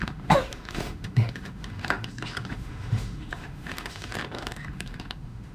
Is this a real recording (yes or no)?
no